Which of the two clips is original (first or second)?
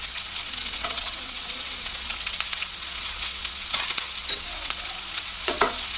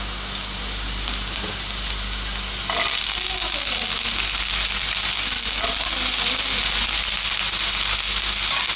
second